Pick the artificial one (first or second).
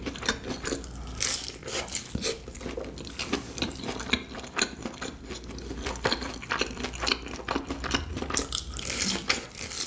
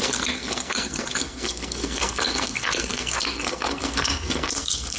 second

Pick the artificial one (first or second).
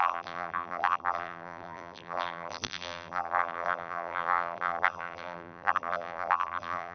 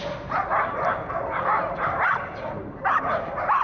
first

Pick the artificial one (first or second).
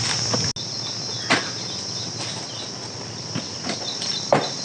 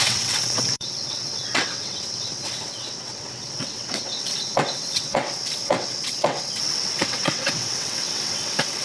second